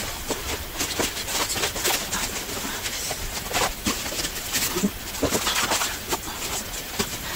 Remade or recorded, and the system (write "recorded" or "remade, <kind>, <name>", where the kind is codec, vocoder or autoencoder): recorded